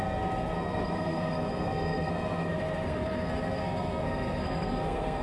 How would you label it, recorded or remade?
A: remade